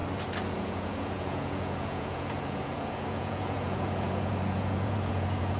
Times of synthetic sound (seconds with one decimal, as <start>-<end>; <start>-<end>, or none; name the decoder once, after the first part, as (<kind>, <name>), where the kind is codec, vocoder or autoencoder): 0.5-5.6 (vocoder, Vocos)